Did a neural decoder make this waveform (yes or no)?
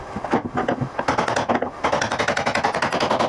no